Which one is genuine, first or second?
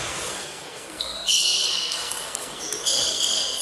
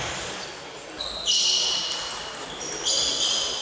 second